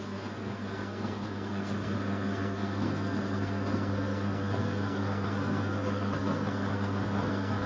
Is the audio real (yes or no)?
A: no